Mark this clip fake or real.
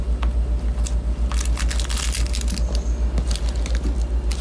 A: real